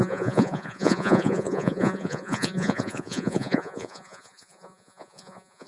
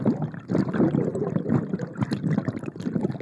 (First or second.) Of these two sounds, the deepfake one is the first